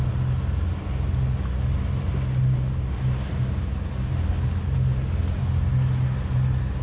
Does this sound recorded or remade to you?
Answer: recorded